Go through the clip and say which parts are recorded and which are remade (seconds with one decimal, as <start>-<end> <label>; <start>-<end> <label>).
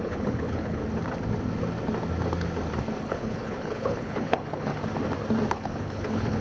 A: 0.0-0.8 remade; 0.8-3.0 recorded; 3.0-4.7 remade; 4.7-5.5 recorded; 5.5-6.4 remade